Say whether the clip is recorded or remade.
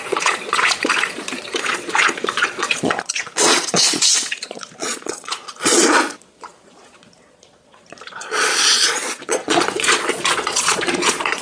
remade